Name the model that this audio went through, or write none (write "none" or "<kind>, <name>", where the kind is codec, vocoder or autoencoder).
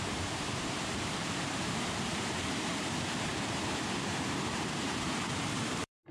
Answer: vocoder, BigVGAN v2